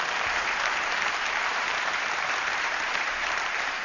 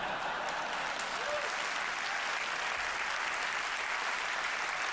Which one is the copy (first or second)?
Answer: first